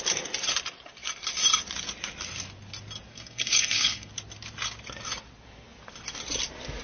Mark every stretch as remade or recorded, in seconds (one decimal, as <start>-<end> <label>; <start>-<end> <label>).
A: 0.0-3.1 recorded; 3.1-4.1 remade; 4.1-6.8 recorded